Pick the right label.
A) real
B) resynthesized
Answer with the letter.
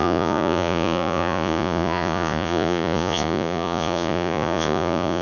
B